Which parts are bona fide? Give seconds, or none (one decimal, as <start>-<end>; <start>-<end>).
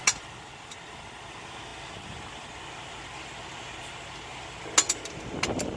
0.0-5.8